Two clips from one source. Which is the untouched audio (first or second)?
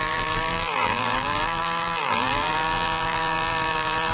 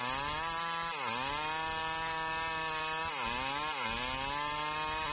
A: second